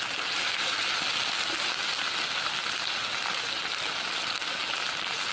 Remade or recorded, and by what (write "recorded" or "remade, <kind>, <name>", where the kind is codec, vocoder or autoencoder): recorded